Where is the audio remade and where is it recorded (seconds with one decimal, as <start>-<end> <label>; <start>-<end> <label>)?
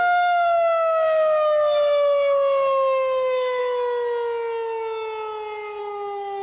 0.0-3.6 remade; 3.6-5.8 recorded; 5.8-6.4 remade